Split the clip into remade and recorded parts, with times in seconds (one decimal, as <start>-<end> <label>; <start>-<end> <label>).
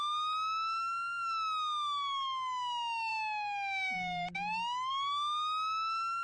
0.0-6.2 recorded